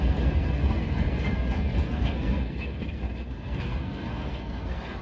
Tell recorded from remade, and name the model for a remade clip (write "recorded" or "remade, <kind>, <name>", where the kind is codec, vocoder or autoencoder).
remade, codec, SNAC